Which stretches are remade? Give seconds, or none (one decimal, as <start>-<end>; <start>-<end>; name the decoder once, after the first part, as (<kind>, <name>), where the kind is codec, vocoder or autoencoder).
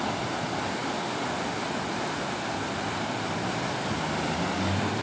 none